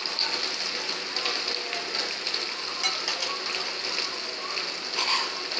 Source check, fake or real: real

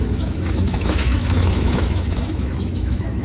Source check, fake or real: fake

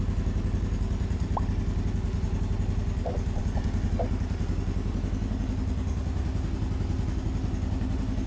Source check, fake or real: real